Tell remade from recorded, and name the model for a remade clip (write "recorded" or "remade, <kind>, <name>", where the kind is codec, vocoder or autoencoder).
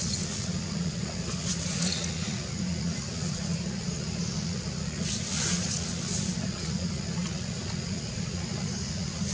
remade, vocoder, Vocos